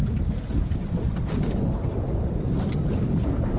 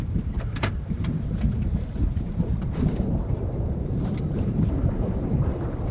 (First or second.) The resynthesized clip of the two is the second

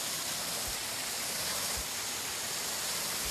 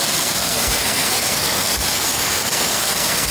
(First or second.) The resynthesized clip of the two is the second